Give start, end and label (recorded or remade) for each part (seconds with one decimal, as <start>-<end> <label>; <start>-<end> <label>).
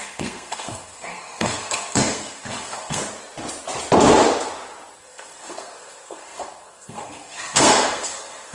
0.0-3.0 remade; 3.0-5.0 recorded; 5.0-8.5 remade